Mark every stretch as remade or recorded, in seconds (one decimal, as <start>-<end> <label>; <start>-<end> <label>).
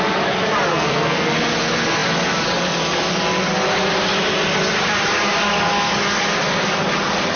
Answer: 0.0-0.7 recorded; 0.7-1.3 remade; 1.3-7.4 recorded